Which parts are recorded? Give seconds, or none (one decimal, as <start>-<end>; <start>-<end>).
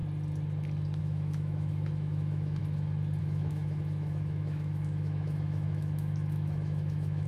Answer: 0.0-1.0; 2.6-3.2